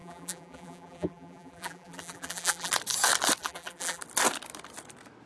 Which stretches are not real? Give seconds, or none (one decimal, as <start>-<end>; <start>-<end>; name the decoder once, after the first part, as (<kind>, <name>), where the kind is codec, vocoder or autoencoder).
0.0-2.7 (vocoder, BigVGAN v2); 3.4-4.0

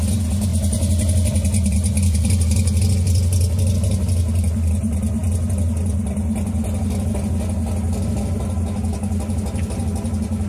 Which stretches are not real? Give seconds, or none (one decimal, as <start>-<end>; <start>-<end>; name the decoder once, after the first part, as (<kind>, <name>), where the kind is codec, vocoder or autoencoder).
none